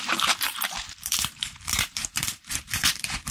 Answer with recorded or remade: remade